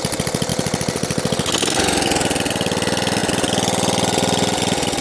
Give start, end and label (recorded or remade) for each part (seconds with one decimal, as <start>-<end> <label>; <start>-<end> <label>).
0.0-5.0 recorded